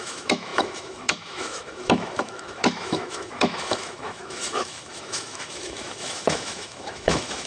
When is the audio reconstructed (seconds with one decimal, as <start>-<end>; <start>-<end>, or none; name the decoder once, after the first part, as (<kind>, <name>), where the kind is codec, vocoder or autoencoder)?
0.0-7.5 (autoencoder, DAC-VAE)